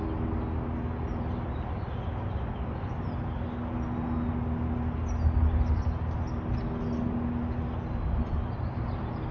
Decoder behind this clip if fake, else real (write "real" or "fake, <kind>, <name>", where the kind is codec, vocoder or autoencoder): real